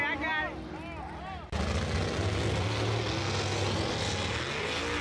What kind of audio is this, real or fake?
real